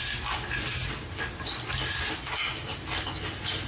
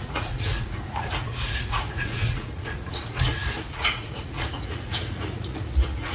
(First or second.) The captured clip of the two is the first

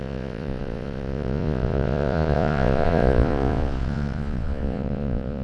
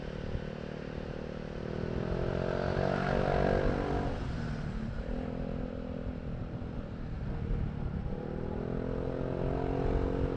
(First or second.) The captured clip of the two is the second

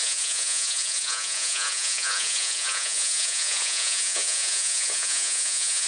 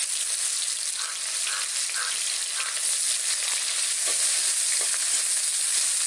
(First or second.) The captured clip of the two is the second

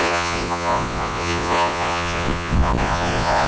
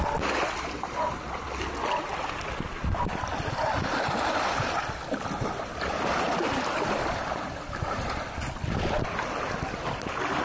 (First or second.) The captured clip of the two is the second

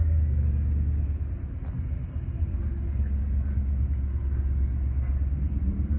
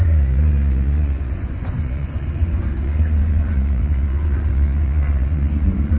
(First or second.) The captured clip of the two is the first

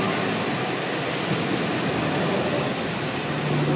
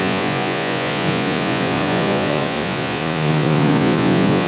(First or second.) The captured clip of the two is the first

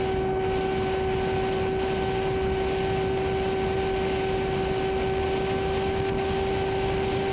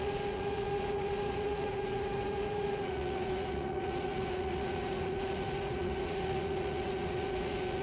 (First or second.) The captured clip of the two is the first